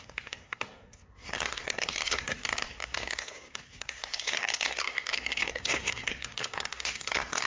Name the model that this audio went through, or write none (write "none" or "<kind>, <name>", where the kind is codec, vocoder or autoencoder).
codec, SNAC